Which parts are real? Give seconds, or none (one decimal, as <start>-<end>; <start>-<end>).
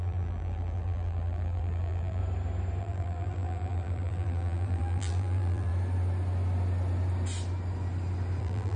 2.2-2.8; 5.7-8.4